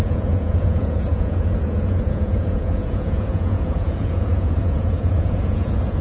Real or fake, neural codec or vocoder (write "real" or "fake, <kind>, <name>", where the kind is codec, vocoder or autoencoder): fake, vocoder, Vocos